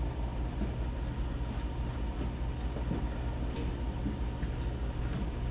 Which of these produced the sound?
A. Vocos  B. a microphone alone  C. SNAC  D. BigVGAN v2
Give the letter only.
B